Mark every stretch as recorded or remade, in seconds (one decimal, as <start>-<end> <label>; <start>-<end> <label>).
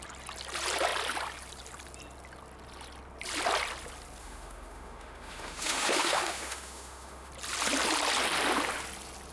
0.0-4.2 recorded; 4.2-7.3 remade; 7.3-9.3 recorded